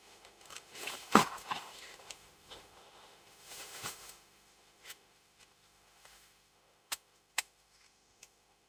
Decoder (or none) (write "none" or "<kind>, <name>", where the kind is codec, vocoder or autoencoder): autoencoder, DAC-VAE